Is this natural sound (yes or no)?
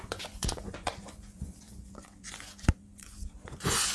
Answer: no